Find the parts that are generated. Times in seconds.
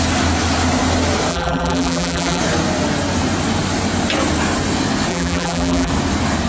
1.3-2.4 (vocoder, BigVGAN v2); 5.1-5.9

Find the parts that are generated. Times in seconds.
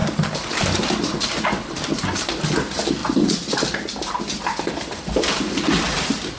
0.0-3.0 (vocoder, BigVGAN v2); 4.7-6.4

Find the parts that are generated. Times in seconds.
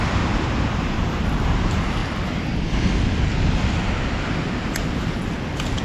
0.0-2.0 (vocoder, BigVGAN v2)